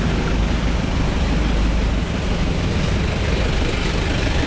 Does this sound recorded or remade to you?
recorded